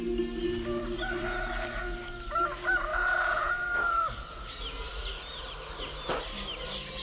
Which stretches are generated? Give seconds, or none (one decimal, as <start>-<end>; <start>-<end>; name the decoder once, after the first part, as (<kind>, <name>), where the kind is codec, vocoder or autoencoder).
2.9-4.5 (vocoder, Vocos)